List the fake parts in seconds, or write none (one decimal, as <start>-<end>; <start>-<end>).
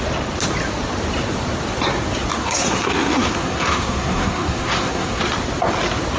2.4-5.2